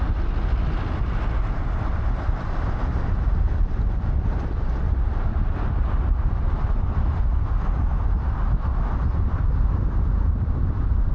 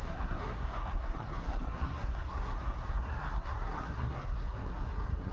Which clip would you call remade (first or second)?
second